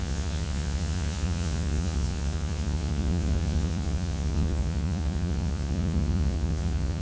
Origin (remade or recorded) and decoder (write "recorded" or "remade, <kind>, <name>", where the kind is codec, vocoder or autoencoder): remade, vocoder, Vocos